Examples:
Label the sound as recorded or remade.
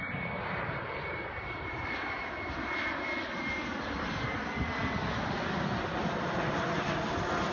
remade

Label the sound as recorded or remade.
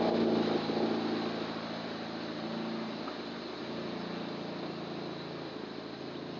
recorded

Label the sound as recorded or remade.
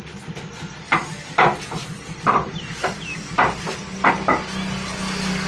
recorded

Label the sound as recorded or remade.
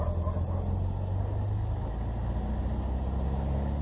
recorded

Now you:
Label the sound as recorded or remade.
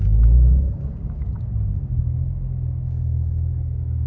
remade